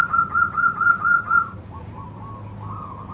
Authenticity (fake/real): real